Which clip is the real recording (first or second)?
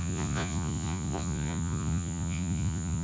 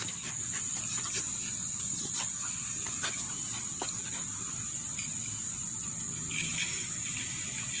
second